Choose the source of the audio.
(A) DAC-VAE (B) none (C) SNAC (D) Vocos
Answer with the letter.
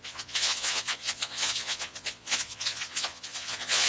D